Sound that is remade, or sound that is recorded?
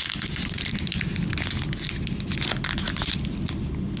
recorded